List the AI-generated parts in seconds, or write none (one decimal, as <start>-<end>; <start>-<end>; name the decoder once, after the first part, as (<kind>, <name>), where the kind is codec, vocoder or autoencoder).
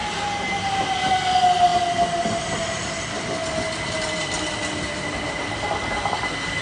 none